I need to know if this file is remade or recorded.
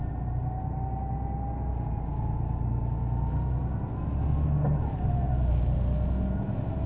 recorded